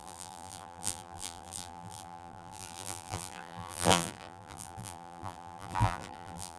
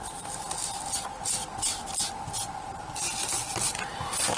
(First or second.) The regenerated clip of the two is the first